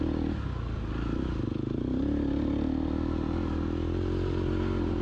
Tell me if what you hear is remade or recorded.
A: recorded